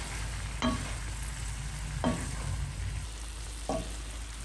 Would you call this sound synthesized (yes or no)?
no